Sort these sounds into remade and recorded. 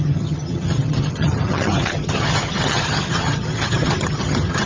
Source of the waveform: remade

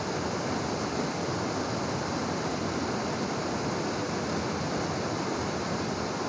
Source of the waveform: recorded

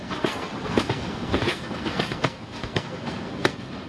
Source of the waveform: remade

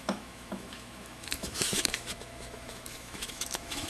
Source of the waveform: remade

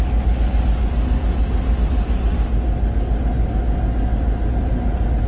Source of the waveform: recorded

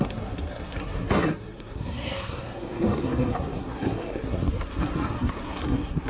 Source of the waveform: remade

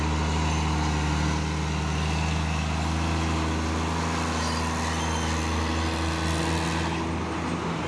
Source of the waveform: recorded